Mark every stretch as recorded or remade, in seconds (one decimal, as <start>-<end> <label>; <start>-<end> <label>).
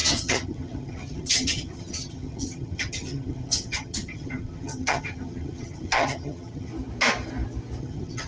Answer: 0.0-6.7 remade; 6.7-7.8 recorded; 7.8-8.3 remade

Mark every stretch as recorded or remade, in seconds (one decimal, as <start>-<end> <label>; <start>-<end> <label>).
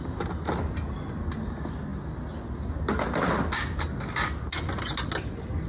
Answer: 0.0-5.7 recorded